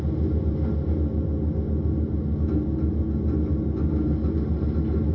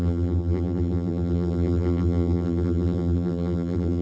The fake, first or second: second